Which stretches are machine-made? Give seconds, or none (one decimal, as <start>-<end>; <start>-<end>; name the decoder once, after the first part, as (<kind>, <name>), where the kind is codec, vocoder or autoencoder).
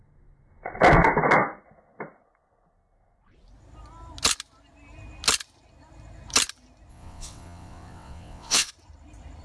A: 6.9-8.7 (vocoder, WaveNeXt)